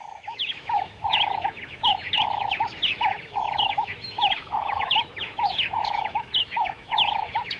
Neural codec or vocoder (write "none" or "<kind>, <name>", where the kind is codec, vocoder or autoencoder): autoencoder, DAC-VAE